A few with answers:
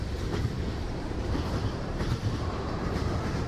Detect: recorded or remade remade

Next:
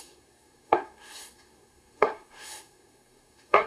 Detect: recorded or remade remade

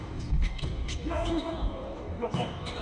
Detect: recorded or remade remade